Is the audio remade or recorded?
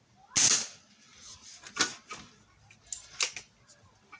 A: recorded